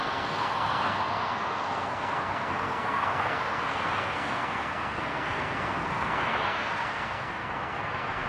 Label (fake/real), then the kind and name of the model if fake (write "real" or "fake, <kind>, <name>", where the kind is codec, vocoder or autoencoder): fake, codec, SNAC